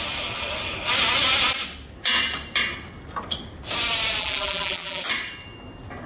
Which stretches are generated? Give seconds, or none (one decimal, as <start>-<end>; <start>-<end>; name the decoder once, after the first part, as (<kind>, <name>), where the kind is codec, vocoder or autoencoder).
4.2-5.0 (vocoder, BigVGAN v2)